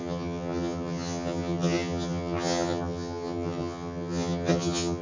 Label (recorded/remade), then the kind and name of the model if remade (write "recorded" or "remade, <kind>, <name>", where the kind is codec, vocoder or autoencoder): remade, vocoder, HiFi-GAN